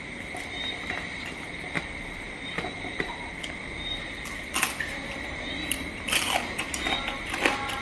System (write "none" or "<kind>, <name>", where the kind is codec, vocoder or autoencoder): vocoder, BigVGAN v2